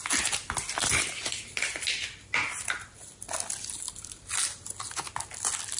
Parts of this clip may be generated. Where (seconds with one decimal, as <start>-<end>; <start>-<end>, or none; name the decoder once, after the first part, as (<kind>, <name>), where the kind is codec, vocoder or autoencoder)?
none